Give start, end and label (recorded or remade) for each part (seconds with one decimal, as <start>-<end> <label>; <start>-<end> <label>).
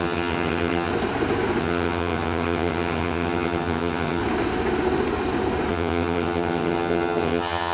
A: 0.0-0.9 remade; 0.9-1.6 recorded; 1.6-4.2 remade; 4.2-5.7 recorded; 5.7-7.7 remade